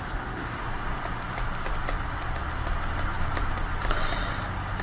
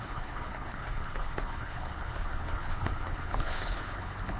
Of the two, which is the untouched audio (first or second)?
first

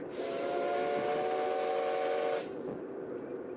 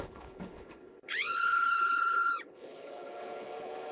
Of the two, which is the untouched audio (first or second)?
first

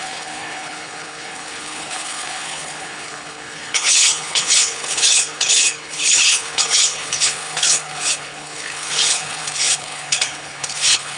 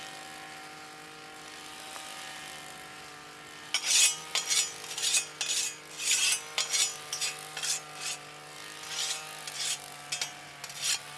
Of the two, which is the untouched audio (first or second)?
second